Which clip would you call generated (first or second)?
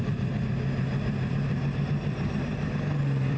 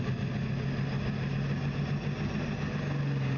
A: first